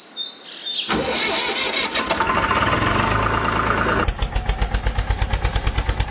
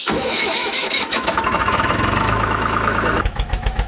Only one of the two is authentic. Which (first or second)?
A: first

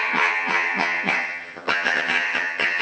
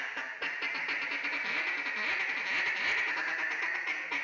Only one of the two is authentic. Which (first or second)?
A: second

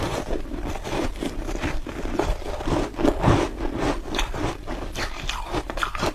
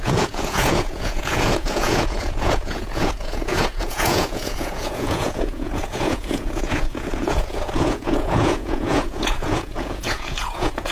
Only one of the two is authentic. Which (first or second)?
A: first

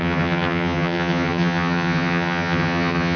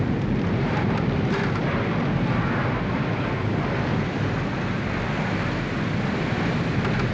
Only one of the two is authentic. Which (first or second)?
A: second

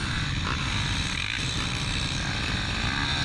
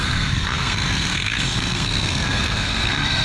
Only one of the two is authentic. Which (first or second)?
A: first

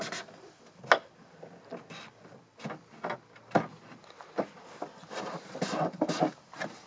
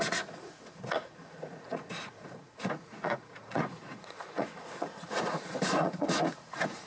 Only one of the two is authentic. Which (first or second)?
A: first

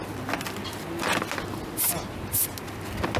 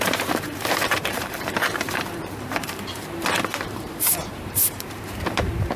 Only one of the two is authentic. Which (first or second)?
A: first